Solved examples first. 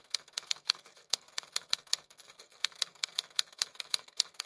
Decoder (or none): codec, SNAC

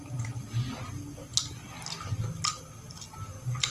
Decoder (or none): none